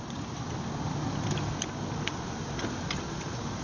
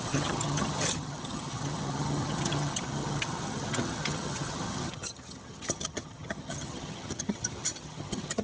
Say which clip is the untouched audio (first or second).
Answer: first